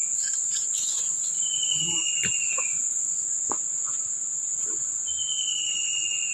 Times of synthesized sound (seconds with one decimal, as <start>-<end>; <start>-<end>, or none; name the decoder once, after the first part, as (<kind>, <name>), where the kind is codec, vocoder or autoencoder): 0.0-1.5 (vocoder, Vocos); 2.8-4.2